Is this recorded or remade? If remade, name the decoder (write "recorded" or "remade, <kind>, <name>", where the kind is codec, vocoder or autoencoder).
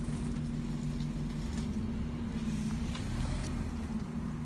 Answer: recorded